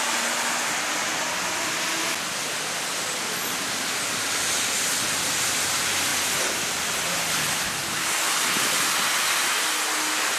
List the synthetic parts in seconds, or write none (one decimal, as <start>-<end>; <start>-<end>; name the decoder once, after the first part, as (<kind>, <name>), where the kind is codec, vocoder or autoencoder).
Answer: 6.1-7.9 (vocoder, BigVGAN v2)